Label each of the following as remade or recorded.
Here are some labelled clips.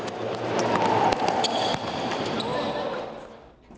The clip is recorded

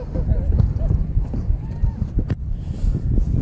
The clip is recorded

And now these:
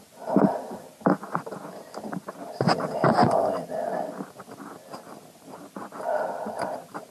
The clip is recorded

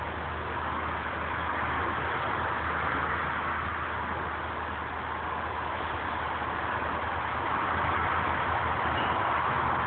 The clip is recorded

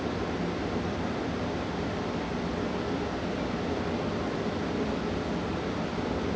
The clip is recorded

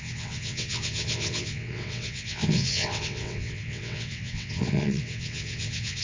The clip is remade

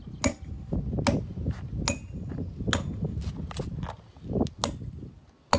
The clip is recorded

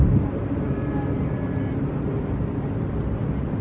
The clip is recorded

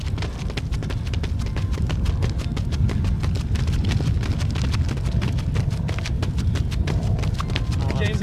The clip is recorded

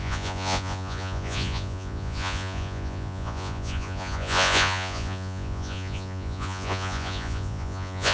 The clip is remade